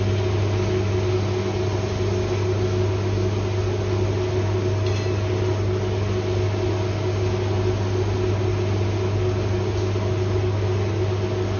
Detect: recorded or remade recorded